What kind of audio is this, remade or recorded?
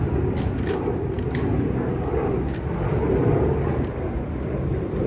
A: recorded